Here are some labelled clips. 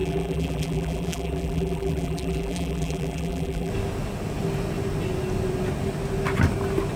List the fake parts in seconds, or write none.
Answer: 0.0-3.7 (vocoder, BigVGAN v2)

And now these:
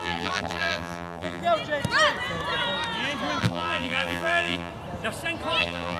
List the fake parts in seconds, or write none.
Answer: 0.0-1.4 (vocoder, BigVGAN v2); 3.4-4.7; 5.6-6.0

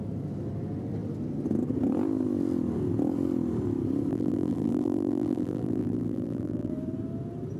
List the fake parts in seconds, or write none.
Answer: 4.1-6.7 (vocoder, BigVGAN v2)

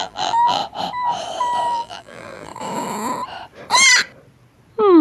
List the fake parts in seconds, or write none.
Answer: 0.0-0.6 (vocoder, BigVGAN v2); 1.7-2.5

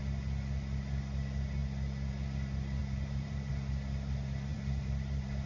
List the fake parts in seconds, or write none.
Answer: 2.8-3.5 (vocoder, BigVGAN v2); 4.5-5.5

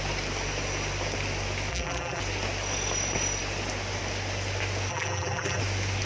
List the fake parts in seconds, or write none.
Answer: 1.7-2.2 (vocoder, BigVGAN v2); 4.9-5.6

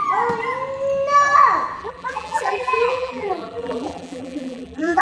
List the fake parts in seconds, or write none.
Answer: 1.8-5.0 (vocoder, BigVGAN v2)